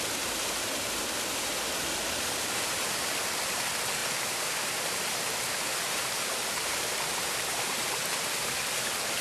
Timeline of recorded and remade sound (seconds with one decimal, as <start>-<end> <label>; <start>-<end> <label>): 0.0-4.0 recorded; 4.0-8.0 remade; 8.0-9.2 recorded

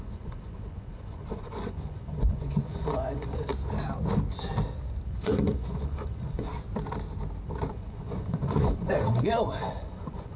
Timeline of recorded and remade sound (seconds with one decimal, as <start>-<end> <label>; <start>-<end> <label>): 0.0-3.5 remade; 3.5-5.1 recorded; 5.1-6.5 remade; 6.5-7.7 recorded; 7.7-10.4 remade

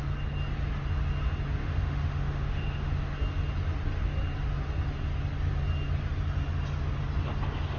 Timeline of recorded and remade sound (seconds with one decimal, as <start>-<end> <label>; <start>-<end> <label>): 0.0-1.6 recorded; 1.6-2.9 remade; 2.9-7.8 recorded

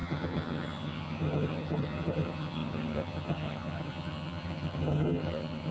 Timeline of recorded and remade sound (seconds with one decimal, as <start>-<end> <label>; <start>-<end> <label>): 0.0-5.7 remade

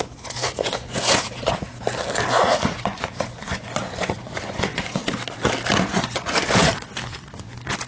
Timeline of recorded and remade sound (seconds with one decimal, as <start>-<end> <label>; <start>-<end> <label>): 0.0-1.7 remade; 1.7-2.3 recorded; 2.3-5.0 remade; 5.0-5.9 recorded; 5.9-7.9 remade